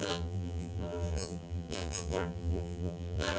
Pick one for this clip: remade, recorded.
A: remade